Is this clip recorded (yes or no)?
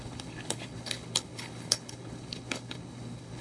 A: no